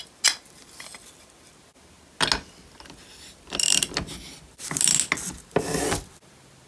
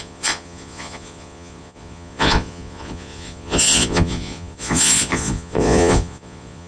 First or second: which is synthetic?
second